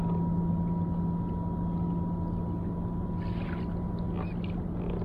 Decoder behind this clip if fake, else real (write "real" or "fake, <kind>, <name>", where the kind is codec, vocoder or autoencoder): real